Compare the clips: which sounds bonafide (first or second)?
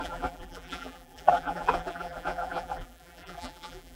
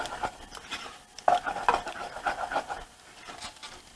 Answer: second